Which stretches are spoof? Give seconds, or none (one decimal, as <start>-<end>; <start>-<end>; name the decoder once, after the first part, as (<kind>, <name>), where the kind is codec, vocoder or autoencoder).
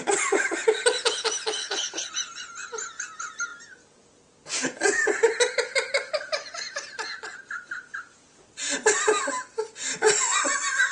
1.6-2.1 (codec, HILCodec)